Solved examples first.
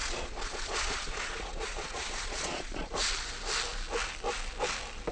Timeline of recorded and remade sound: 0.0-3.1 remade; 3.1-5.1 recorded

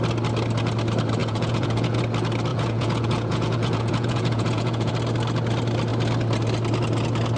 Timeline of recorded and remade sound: 0.0-1.2 recorded; 1.2-2.0 remade; 2.0-2.5 recorded; 2.5-4.9 remade; 4.9-7.4 recorded

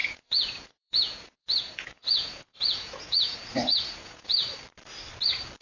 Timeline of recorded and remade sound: 0.0-4.4 remade; 4.4-5.6 recorded

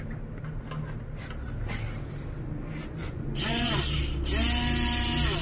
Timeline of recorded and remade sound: 0.0-3.0 recorded; 3.0-3.8 remade; 3.8-5.4 recorded

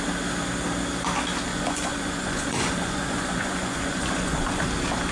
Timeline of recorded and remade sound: 0.0-1.5 recorded; 1.5-4.6 remade; 4.6-5.1 recorded